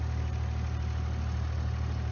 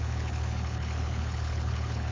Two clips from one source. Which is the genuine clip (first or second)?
first